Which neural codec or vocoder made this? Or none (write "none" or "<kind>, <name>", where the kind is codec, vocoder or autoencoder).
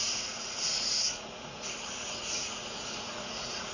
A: vocoder, Vocos